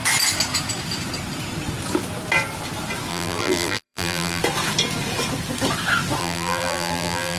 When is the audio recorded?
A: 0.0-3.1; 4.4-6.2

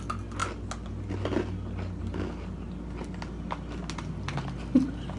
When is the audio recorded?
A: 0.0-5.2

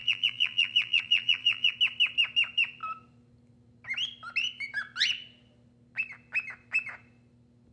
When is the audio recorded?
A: 1.7-7.7

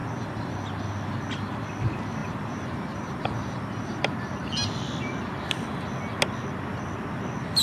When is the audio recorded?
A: 0.5-2.2; 4.0-7.6

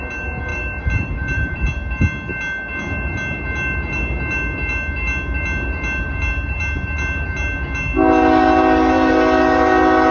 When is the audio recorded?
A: 0.0-0.5; 1.7-10.1

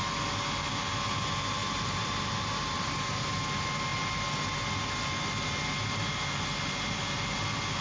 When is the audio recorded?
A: 0.0-1.6; 3.3-7.8

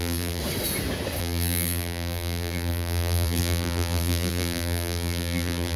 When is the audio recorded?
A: 0.4-1.2